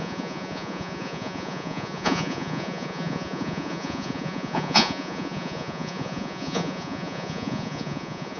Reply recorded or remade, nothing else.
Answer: remade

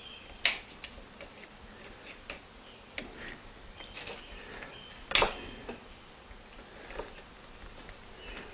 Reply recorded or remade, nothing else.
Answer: recorded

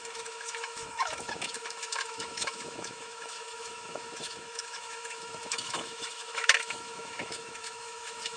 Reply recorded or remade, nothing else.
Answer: remade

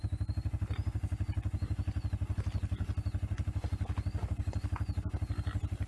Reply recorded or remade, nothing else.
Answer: recorded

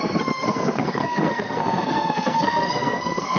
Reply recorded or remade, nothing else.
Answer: remade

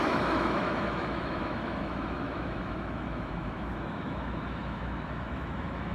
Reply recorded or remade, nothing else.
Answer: remade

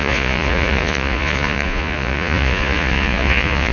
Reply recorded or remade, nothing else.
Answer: remade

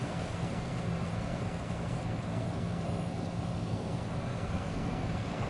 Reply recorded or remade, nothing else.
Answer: remade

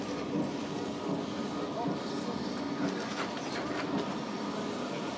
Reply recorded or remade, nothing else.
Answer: recorded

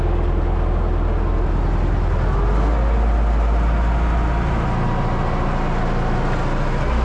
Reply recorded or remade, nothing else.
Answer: recorded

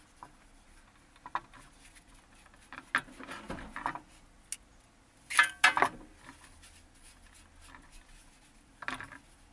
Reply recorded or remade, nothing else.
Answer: recorded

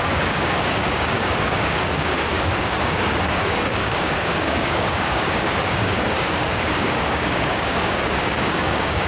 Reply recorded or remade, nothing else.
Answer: remade